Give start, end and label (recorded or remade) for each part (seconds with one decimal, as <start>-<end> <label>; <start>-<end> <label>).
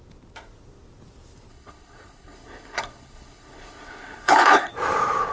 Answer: 0.0-1.5 recorded; 1.5-4.7 remade; 4.7-5.3 recorded